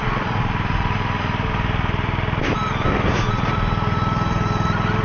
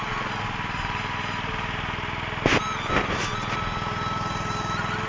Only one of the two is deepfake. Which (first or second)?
first